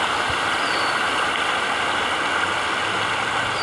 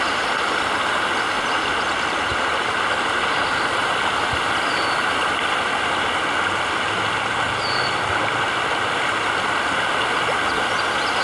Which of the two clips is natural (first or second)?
first